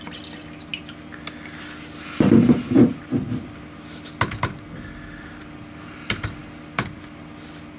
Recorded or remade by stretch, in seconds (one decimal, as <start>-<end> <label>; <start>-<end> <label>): 0.0-7.8 recorded